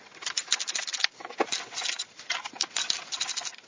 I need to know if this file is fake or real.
real